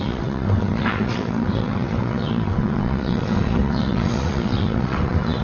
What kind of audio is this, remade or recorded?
remade